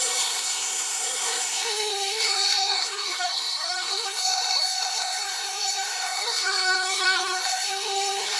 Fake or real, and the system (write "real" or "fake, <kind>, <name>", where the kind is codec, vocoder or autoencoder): fake, codec, SNAC